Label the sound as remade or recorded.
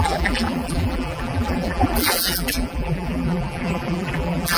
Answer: remade